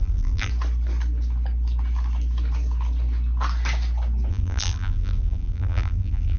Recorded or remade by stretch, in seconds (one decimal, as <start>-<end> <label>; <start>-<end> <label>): 0.0-0.5 remade; 0.5-4.3 recorded; 4.3-6.4 remade